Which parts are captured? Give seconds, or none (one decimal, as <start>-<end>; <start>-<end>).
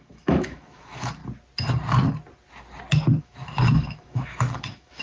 1.2-3.2